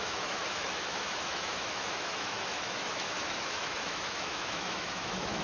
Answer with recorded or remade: remade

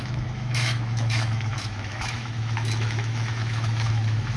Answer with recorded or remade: remade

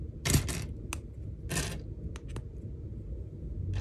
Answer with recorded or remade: recorded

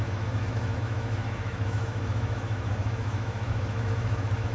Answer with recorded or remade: remade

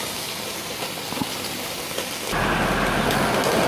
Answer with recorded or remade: recorded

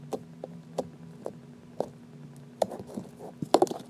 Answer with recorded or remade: recorded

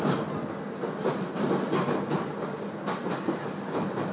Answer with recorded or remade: recorded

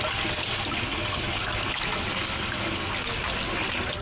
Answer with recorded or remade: recorded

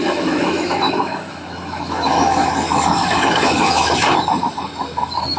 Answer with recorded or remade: remade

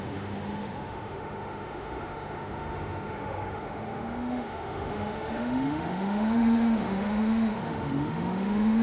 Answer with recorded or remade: remade